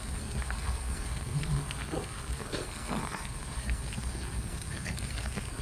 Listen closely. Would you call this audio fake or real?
fake